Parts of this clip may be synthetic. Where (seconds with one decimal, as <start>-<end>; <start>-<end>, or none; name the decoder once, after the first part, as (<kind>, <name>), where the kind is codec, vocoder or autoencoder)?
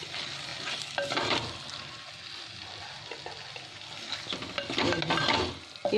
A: none